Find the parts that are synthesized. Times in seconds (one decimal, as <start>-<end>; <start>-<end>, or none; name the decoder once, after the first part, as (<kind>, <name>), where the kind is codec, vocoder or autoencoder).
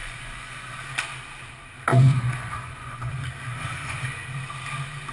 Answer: 0.0-0.8 (vocoder, Vocos); 1.9-3.1; 3.5-4.0